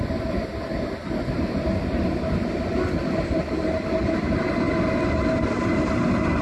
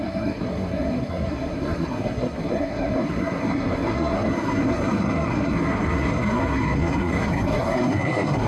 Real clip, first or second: first